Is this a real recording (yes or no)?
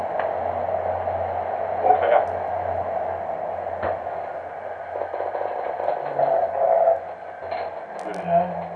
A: yes